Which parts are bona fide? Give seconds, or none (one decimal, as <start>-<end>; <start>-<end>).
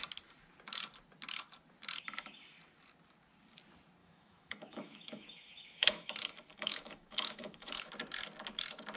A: 0.0-4.0; 6.1-6.5; 7.9-9.0